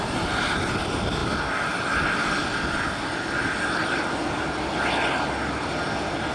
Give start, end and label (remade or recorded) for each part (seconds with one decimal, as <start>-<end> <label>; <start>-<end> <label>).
0.0-6.3 recorded